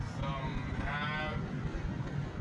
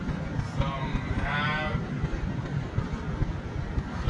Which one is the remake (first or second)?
second